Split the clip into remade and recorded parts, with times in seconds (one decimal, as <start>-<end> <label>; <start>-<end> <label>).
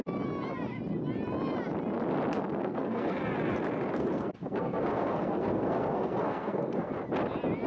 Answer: 0.0-2.4 recorded; 2.4-3.2 remade; 3.2-3.9 recorded; 3.9-6.9 remade; 6.9-7.7 recorded